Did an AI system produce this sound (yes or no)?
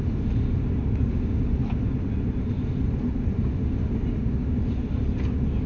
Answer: no